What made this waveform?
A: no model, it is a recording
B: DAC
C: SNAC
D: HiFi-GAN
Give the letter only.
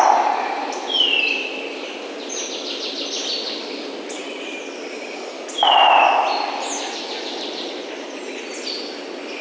A